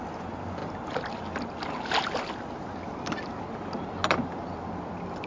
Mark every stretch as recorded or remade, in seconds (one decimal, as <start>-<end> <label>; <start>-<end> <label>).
0.0-5.3 recorded